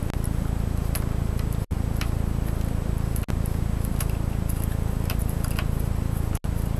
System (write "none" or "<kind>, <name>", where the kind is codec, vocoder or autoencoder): none